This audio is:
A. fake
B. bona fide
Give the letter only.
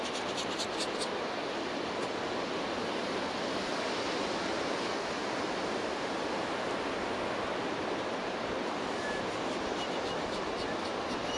B